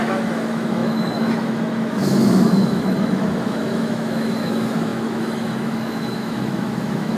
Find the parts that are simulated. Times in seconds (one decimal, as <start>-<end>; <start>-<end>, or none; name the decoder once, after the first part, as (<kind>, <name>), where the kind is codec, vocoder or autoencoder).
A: 0.0-7.2 (autoencoder, DAC-VAE)